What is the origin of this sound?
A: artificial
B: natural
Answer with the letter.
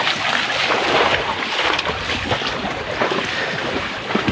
B